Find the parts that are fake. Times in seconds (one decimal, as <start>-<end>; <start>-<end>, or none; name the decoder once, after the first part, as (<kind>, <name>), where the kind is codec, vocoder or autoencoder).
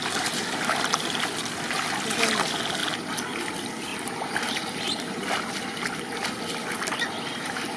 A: 3.9-4.7 (vocoder, BigVGAN v2)